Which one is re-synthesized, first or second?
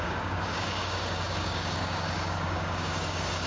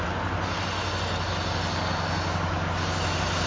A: first